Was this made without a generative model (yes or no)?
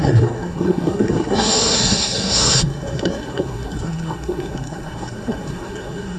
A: no